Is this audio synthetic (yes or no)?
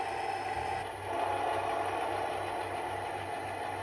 no